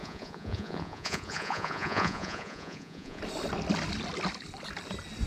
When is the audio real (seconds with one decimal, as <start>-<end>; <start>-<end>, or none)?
3.2-5.3